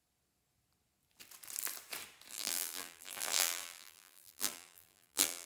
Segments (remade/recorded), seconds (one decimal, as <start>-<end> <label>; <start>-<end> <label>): 0.0-2.3 recorded; 2.3-5.5 remade